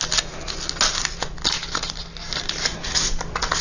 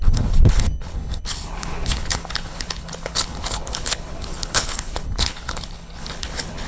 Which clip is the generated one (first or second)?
second